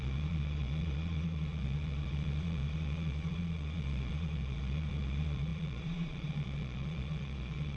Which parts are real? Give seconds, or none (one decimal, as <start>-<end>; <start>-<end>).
none